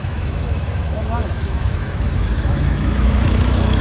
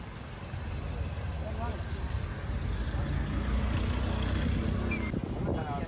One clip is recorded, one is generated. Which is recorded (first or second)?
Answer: second